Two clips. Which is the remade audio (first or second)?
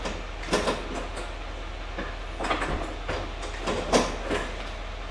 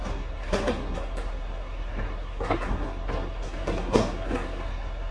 second